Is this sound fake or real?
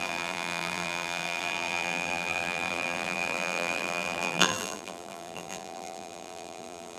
fake